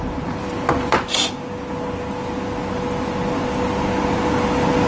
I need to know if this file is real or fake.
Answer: real